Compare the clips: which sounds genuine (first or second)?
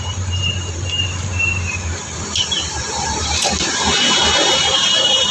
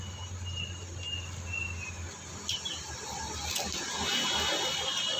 second